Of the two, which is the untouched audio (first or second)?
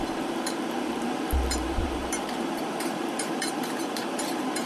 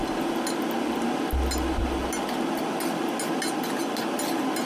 second